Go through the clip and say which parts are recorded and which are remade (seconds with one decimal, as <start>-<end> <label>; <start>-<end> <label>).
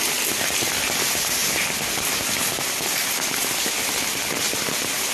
0.0-5.1 recorded